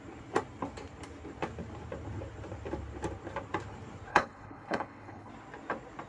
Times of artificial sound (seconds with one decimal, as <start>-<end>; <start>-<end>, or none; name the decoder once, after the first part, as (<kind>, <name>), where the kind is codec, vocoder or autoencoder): 4.1-5.3 (codec, HILCodec)

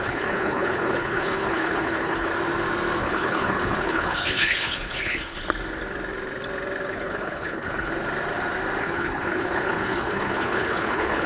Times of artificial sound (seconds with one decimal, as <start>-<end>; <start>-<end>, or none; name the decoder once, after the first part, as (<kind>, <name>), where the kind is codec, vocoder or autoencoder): 0.0-2.3 (codec, HILCodec); 3.0-5.4; 6.9-7.9; 8.8-11.3

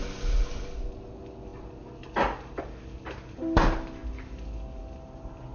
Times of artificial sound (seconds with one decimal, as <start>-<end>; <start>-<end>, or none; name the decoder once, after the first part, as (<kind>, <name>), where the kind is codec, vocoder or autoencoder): none